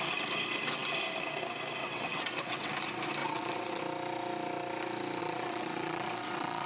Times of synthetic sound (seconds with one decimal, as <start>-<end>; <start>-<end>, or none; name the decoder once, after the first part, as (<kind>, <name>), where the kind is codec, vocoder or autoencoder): 1.8-2.7 (vocoder, WaveNeXt); 3.2-3.8; 5.2-6.7